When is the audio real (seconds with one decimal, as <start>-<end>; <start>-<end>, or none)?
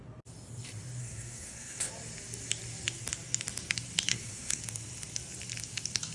0.0-1.0; 1.9-4.1; 4.6-6.1